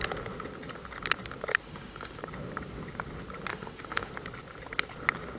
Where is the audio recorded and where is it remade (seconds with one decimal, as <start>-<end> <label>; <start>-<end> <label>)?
0.0-1.6 recorded; 1.6-2.2 remade; 2.2-3.5 recorded; 3.5-4.1 remade; 4.1-5.4 recorded